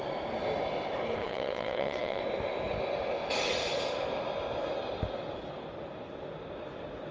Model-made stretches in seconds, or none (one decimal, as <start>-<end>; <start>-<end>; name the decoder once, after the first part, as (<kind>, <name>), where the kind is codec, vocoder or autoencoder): 1.2-2.2 (vocoder, WaveNeXt)